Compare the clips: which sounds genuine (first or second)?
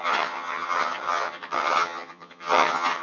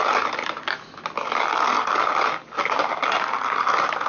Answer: second